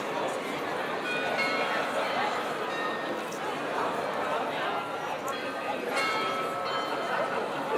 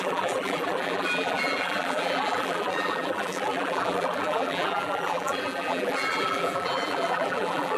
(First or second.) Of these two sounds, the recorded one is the first